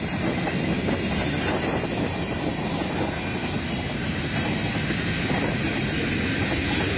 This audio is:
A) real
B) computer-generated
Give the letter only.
A